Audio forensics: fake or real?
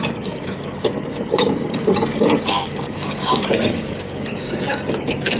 fake